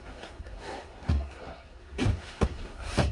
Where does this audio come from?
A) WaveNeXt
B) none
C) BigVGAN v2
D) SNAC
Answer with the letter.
D